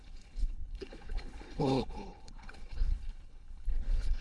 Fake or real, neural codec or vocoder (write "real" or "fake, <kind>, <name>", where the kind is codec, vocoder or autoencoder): fake, codec, HILCodec